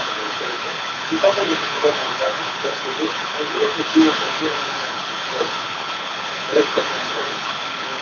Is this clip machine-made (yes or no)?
yes